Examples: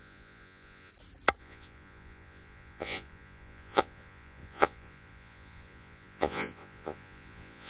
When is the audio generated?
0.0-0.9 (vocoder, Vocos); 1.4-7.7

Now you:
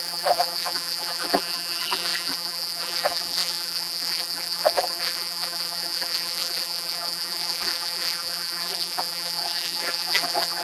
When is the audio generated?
0.0-10.6 (vocoder, BigVGAN v2)

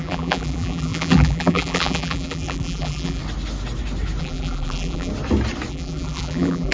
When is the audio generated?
0.0-3.2 (vocoder, BigVGAN v2); 4.2-5.1; 5.7-6.7

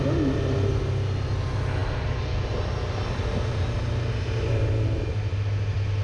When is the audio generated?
none

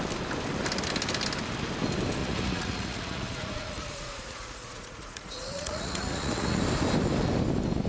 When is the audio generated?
2.2-6.6 (vocoder, Vocos)